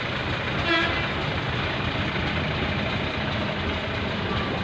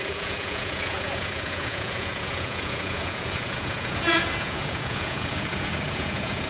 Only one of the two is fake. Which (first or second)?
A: second